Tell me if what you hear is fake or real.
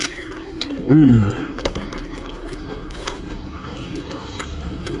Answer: fake